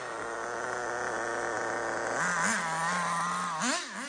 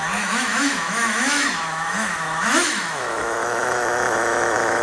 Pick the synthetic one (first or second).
second